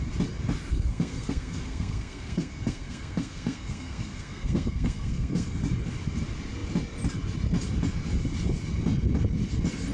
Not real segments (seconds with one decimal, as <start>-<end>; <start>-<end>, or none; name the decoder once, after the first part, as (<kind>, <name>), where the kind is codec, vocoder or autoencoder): 0.7-5.6 (codec, SNAC)